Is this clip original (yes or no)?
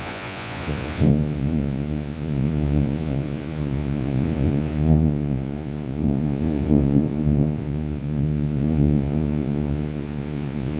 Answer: no